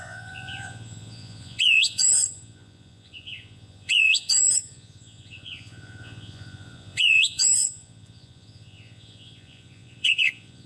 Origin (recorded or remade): remade